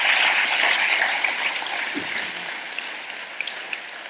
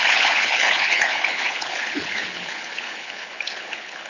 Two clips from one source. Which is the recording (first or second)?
first